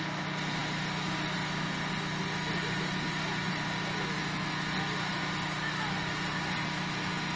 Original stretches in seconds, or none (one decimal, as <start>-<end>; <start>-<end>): 0.0-7.4